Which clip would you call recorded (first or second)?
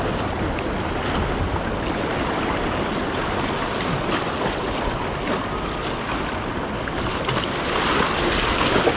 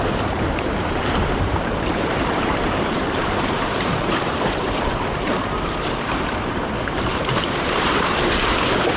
first